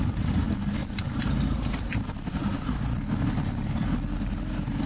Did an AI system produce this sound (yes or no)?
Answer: no